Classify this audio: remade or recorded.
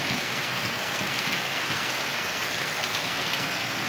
remade